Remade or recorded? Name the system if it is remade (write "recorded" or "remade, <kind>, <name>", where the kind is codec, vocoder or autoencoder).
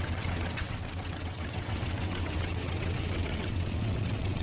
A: remade, vocoder, WaveNeXt